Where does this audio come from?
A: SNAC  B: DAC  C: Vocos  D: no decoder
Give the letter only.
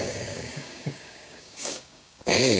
B